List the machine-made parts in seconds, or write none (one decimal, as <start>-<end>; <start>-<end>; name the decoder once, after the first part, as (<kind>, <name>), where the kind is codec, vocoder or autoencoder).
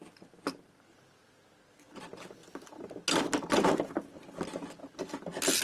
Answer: none